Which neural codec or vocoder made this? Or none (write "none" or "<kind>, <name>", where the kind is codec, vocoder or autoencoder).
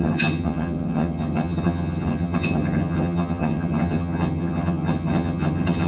vocoder, HiFi-GAN